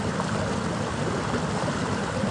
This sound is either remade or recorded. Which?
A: recorded